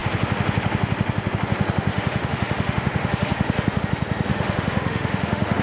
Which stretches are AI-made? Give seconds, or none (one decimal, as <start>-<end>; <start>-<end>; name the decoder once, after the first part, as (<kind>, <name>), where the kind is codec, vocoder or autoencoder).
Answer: 1.9-3.8 (autoencoder, DAC-VAE); 4.3-5.6